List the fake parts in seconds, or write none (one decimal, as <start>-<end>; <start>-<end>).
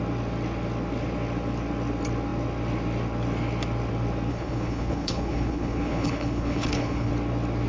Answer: 4.3-7.1